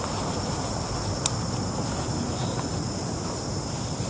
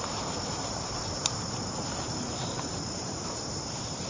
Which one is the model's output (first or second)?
second